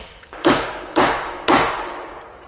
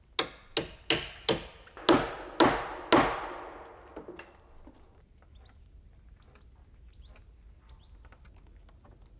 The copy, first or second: first